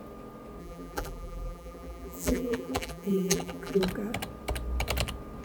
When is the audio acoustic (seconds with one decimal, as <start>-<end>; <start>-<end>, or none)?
0.0-0.6; 3.8-5.4